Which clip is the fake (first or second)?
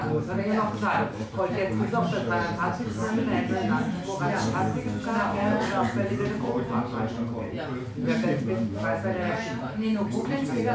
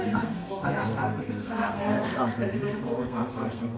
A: second